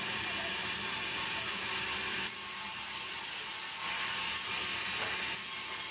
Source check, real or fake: real